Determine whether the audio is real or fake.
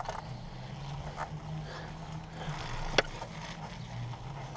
real